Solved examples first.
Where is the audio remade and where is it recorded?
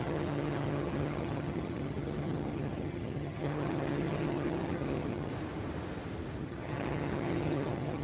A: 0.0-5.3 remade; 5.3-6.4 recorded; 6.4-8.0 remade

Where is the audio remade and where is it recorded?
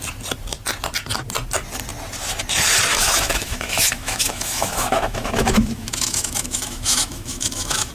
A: 0.0-2.9 recorded; 2.9-7.9 remade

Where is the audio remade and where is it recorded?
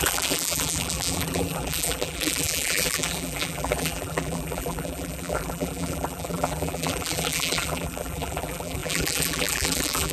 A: 0.0-10.1 remade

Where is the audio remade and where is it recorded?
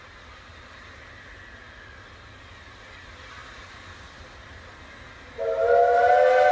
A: 0.0-6.5 recorded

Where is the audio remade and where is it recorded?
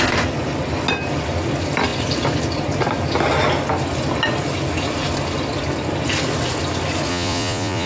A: 0.0-7.1 recorded; 7.1-7.9 remade